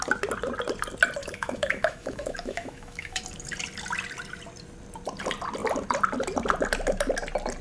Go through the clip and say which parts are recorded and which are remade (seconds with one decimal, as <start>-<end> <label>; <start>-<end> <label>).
0.0-1.2 recorded; 1.2-3.2 remade; 3.2-7.6 recorded